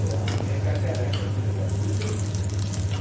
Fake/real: real